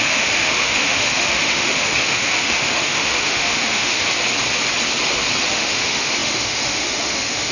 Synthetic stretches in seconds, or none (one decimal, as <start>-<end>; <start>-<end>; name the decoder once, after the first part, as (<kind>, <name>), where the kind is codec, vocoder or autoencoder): 0.0-4.0 (autoencoder, DAC-VAE); 5.5-7.5